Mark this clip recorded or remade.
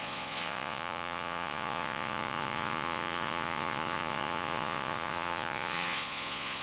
remade